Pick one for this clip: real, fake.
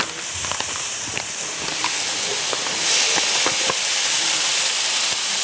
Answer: fake